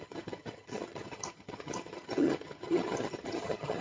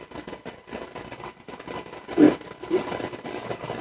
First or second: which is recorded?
second